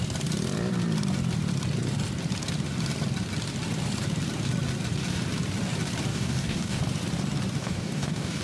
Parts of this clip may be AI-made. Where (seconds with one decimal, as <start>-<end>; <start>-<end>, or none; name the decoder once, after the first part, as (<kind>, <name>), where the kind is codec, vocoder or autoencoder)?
6.1-6.8 (codec, DAC); 7.6-8.4